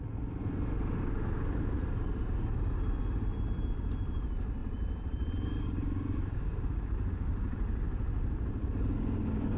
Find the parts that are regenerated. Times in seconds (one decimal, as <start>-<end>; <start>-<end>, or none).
4.6-7.1